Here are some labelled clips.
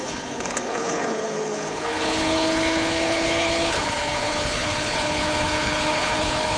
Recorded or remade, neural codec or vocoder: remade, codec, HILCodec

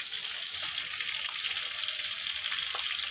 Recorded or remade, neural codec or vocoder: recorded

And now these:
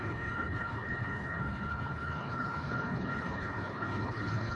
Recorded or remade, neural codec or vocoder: remade, codec, HILCodec